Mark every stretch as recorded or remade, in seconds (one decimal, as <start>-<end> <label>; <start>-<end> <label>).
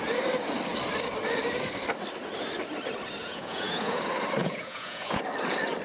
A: 0.0-3.2 recorded; 3.2-4.0 remade; 4.0-4.4 recorded; 4.4-5.2 remade; 5.2-5.8 recorded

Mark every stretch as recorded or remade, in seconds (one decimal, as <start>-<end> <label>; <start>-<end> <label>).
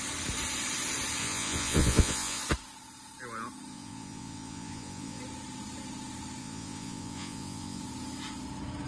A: 0.0-1.2 recorded; 1.2-2.4 remade; 2.4-3.7 recorded; 3.7-5.2 remade; 5.2-6.4 recorded; 6.4-7.8 remade; 7.8-8.9 recorded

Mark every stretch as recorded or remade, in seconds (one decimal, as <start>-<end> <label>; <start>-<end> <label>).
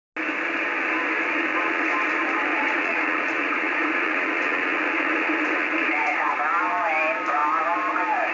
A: 0.0-1.5 recorded; 1.5-2.1 remade; 2.1-2.5 recorded; 2.5-6.4 remade; 6.4-8.3 recorded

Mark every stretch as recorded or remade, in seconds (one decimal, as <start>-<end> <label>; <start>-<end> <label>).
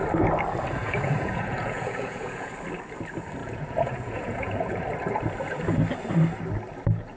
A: 0.0-0.8 recorded; 0.8-2.5 remade; 2.5-3.4 recorded; 3.4-4.8 remade; 4.8-7.2 recorded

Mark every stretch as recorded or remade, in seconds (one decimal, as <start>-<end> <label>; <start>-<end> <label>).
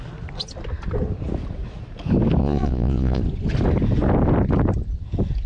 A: 0.0-2.4 recorded; 2.4-3.2 remade; 3.2-5.5 recorded